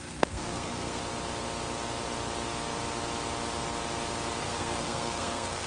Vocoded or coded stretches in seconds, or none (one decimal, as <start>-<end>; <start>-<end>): 0.0-1.0; 4.4-5.7